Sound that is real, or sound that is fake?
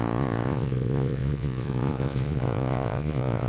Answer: fake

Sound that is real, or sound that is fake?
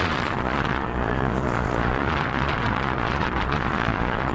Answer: fake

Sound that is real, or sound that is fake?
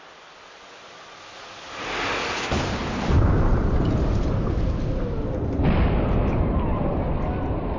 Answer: real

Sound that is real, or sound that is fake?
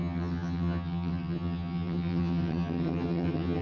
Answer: fake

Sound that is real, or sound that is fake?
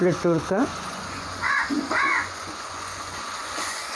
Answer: fake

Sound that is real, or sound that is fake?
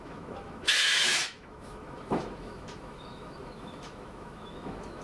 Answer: fake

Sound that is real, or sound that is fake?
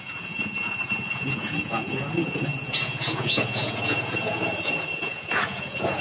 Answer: fake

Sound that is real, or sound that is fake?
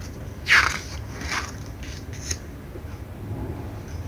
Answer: real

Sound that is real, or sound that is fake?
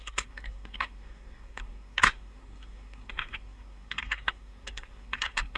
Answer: fake